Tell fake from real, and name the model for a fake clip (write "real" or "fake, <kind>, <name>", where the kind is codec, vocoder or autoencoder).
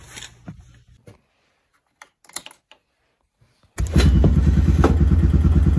real